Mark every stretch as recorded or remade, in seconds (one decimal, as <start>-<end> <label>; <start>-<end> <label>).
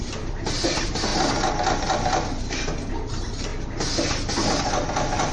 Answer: 0.0-1.1 remade; 1.1-2.9 recorded; 2.9-3.5 remade; 3.5-5.3 recorded